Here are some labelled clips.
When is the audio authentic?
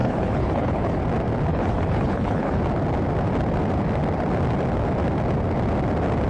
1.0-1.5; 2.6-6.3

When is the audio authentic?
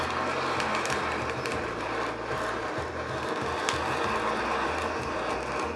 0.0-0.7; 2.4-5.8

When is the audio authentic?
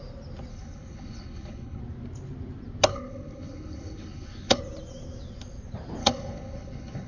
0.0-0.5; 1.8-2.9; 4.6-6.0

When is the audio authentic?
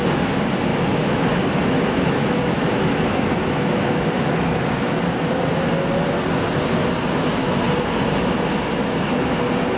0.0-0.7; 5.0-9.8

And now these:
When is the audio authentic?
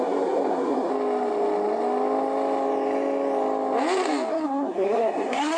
0.9-4.3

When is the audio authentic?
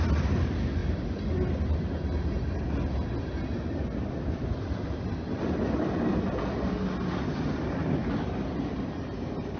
0.0-9.6